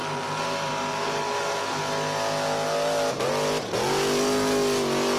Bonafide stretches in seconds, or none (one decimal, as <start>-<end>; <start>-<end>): 1.8-5.2